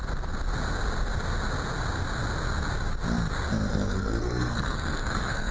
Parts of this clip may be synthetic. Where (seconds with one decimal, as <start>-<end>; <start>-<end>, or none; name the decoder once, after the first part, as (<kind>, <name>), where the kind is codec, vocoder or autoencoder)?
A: 3.7-5.5 (codec, SNAC)